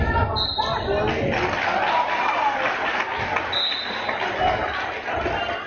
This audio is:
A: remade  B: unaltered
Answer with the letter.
B